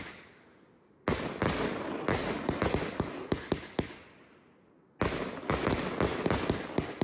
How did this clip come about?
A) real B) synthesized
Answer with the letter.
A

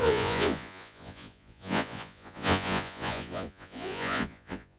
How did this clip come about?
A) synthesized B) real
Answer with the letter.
A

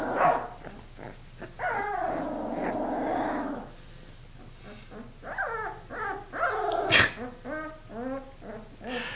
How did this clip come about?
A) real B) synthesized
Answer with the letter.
A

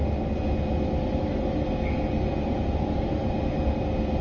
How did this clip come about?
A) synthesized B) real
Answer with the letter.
B